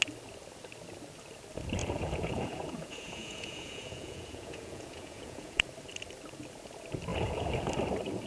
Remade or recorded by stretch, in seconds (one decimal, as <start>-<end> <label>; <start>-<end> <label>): 0.0-1.8 recorded; 1.8-5.6 remade; 5.6-7.1 recorded; 7.1-7.7 remade; 7.7-8.3 recorded